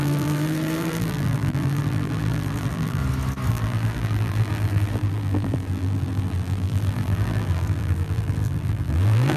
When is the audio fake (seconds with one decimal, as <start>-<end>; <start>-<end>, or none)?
0.0-3.0; 3.5-9.4